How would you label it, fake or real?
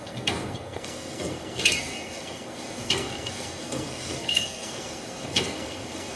fake